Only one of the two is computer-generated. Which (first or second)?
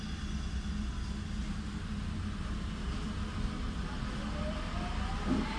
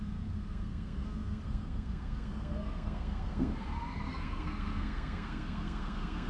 second